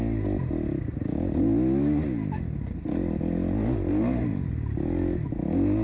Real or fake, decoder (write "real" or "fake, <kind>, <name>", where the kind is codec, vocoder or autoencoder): real